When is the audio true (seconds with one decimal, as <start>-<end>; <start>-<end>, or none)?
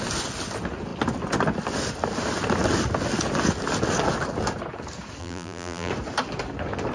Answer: 0.0-5.2; 5.9-6.9